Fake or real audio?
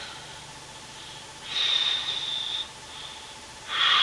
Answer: real